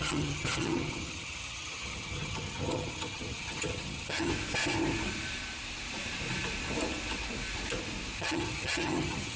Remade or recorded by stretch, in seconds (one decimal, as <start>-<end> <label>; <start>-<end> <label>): 0.0-4.3 remade; 4.3-8.2 recorded; 8.2-9.4 remade